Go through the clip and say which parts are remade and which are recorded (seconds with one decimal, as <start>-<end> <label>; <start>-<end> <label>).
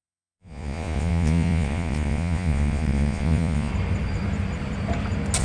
0.0-3.7 remade; 3.7-5.4 recorded